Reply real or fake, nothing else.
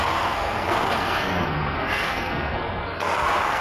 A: fake